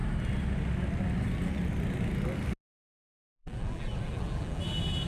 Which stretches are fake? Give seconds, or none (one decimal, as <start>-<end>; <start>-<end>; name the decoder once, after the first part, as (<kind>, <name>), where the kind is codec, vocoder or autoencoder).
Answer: 3.4-4.6 (vocoder, BigVGAN v2)